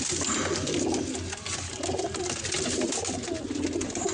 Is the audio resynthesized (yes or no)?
no